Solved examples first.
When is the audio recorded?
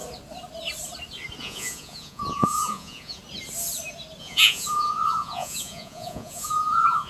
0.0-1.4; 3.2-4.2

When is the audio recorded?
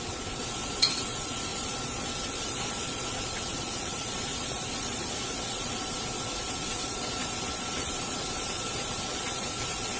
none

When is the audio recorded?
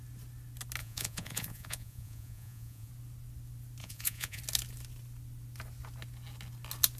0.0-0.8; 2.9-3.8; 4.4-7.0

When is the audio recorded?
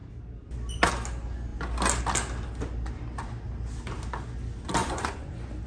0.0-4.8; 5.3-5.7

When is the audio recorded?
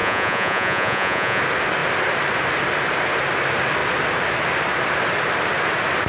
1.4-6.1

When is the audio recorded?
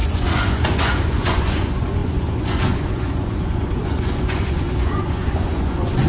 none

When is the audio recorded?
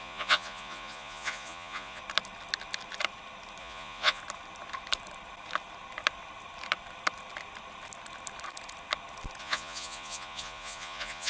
2.0-3.6; 4.2-9.4